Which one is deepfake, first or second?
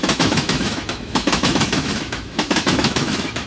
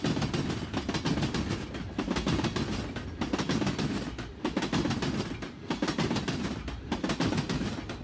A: first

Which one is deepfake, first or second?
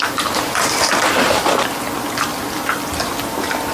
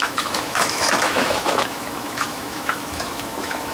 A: second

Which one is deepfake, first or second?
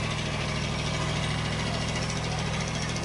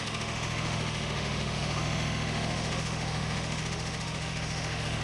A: second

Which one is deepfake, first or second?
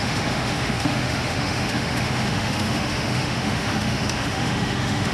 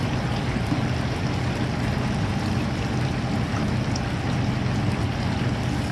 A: first